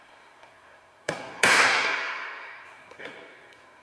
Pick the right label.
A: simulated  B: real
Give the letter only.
A